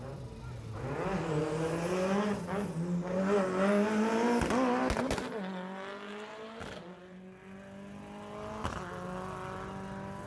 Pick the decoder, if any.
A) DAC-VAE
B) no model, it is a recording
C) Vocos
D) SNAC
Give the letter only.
B